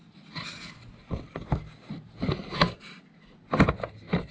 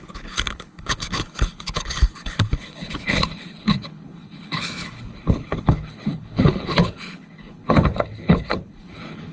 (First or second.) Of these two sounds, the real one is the first